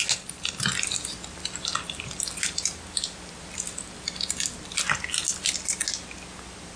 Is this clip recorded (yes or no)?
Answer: yes